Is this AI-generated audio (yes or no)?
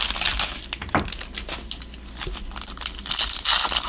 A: no